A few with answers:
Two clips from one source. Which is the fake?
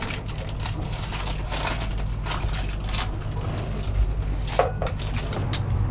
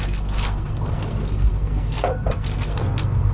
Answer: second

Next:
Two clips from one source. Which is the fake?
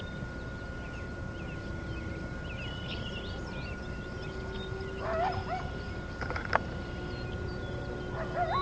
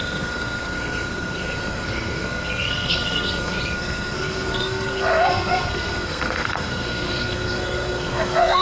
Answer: second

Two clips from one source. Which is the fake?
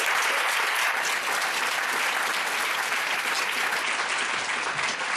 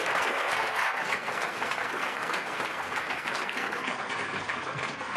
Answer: second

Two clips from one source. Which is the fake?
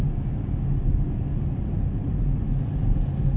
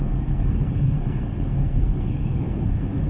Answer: second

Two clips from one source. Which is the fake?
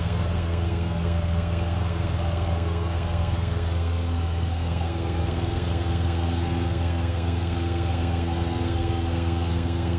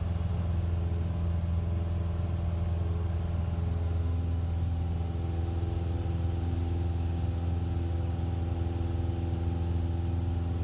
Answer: first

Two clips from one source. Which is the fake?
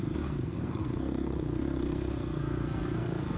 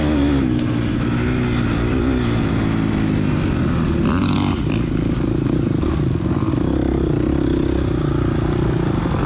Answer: first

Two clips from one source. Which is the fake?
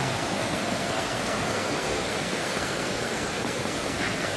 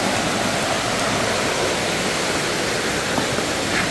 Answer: first